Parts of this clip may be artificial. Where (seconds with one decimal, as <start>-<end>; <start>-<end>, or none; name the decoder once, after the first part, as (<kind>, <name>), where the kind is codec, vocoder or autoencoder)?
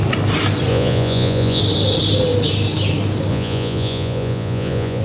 0.7-1.6 (vocoder, Vocos); 3.3-5.0